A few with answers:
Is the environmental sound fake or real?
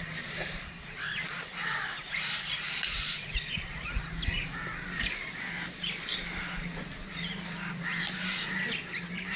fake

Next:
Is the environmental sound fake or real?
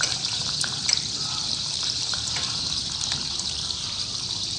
fake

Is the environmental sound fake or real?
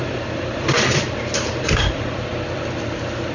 fake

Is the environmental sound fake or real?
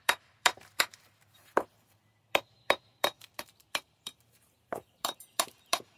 fake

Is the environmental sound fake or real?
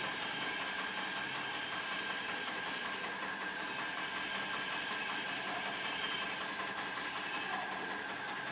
real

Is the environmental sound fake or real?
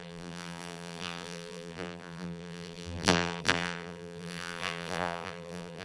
fake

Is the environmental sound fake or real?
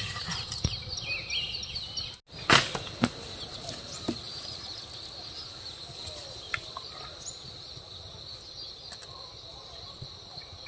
real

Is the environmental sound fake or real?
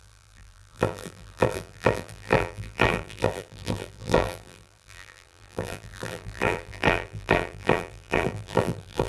fake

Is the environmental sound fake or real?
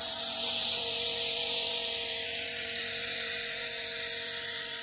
fake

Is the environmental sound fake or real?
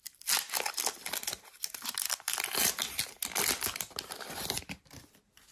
real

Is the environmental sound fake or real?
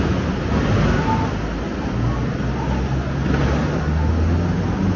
real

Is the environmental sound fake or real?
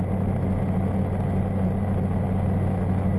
real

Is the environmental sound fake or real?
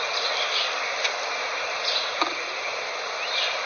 real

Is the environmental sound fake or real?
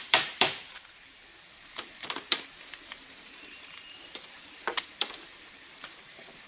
fake